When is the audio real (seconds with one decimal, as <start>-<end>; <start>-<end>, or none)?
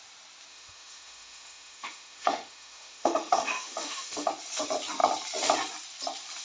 0.0-0.5; 4.3-6.4